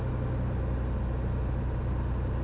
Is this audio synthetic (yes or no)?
no